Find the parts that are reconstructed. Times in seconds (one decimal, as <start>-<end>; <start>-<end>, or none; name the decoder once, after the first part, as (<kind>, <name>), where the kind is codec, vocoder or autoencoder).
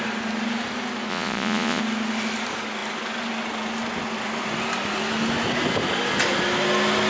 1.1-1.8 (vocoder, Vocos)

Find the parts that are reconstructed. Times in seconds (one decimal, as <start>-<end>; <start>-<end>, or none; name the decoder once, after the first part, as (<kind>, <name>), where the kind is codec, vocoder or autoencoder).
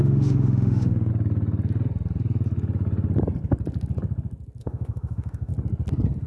0.0-1.1 (autoencoder, DAC-VAE); 4.6-5.5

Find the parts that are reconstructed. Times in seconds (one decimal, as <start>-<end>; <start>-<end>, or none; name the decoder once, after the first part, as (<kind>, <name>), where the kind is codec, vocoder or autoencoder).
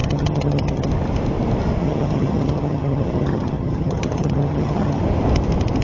0.0-0.9 (vocoder, HiFi-GAN); 1.8-5.0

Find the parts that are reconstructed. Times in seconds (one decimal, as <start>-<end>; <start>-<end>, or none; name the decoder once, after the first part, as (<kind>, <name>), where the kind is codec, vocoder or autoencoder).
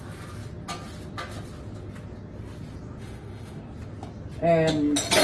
3.0-3.6 (autoencoder, DAC-VAE)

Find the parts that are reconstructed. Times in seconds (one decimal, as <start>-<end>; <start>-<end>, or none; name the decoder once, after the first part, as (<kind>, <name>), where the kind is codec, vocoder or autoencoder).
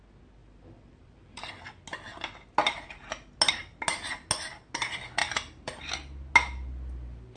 0.4-1.5 (vocoder, BigVGAN v2); 5.2-5.8